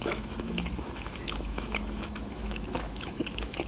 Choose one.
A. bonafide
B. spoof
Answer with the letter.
B